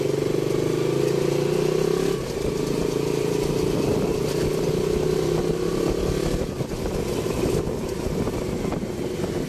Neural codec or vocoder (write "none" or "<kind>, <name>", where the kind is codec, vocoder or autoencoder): none